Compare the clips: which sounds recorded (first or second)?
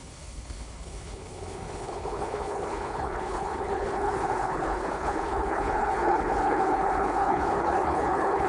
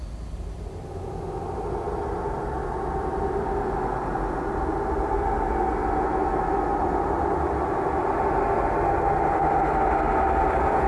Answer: second